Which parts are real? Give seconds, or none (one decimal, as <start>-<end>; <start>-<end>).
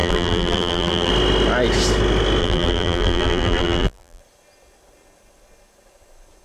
1.1-2.4; 4.2-6.4